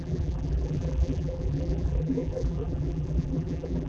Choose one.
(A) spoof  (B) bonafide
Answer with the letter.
A